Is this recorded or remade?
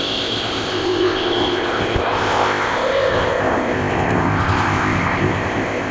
remade